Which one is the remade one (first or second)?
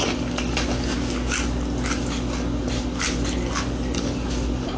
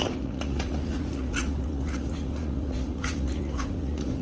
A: second